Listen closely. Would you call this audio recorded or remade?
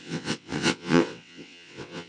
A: remade